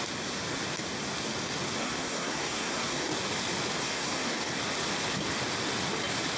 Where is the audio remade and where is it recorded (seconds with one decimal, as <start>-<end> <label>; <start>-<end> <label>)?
0.0-1.8 recorded; 1.8-3.1 remade; 3.1-3.8 recorded; 3.8-4.6 remade; 4.6-6.4 recorded